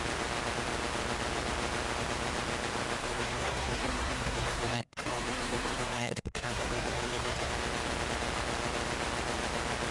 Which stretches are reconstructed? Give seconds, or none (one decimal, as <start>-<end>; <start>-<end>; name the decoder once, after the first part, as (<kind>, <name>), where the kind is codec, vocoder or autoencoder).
3.0-7.5 (codec, SNAC)